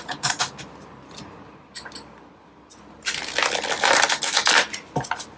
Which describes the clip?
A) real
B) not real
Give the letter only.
A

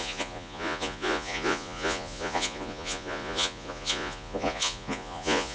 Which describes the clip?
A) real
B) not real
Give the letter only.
B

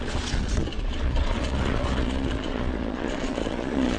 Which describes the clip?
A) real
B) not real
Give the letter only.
B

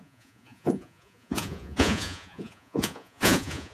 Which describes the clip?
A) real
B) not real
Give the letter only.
B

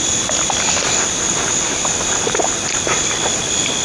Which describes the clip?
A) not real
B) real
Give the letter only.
B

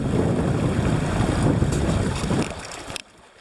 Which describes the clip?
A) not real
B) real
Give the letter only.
B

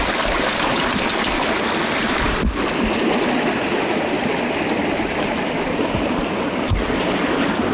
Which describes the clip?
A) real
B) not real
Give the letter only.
A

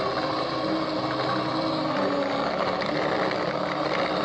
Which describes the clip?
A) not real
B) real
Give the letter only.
B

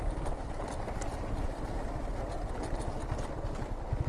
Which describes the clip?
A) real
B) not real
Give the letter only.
A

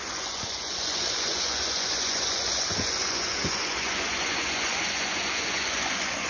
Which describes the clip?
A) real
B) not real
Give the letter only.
B